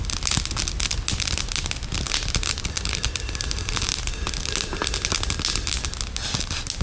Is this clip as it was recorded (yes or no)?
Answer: yes